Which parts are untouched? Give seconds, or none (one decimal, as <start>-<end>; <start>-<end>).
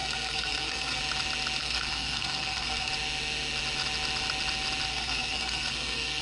1.0-1.6; 2.9-4.9